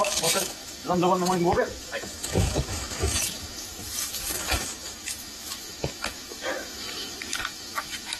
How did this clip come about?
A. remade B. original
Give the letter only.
A